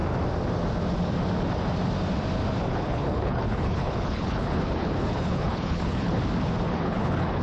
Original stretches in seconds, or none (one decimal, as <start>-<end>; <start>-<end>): 0.0-2.7; 6.2-6.7